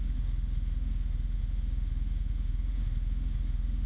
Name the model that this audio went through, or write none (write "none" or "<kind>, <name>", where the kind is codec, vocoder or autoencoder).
autoencoder, DAC-VAE